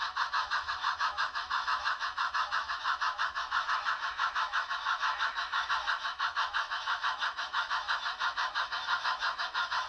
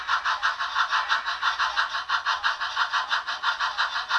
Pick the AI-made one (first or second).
first